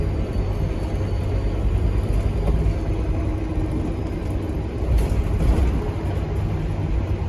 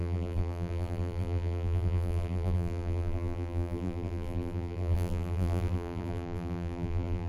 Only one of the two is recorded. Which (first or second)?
first